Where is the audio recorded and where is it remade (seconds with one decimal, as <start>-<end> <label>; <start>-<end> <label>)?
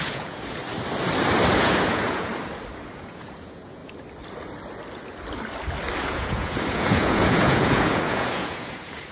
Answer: 0.0-0.6 remade; 0.6-1.5 recorded; 1.5-2.3 remade; 2.3-2.9 recorded; 2.9-3.8 remade; 3.8-6.0 recorded; 6.0-9.1 remade